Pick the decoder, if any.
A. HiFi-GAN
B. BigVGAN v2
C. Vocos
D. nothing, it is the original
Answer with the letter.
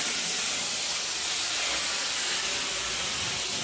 D